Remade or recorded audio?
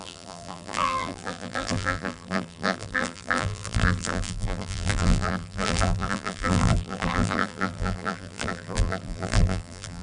remade